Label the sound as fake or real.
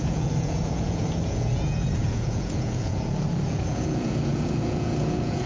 fake